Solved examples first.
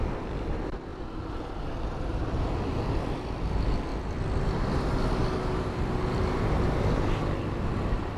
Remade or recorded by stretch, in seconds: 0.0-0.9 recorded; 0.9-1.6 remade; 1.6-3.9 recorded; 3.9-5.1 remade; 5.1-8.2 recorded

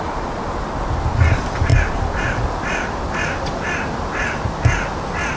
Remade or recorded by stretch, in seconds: 0.0-5.4 recorded

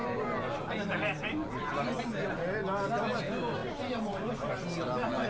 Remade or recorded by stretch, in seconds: 0.0-5.3 recorded